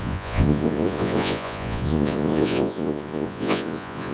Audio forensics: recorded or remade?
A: remade